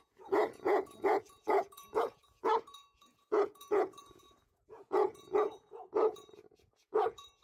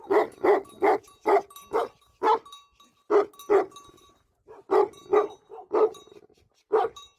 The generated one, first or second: first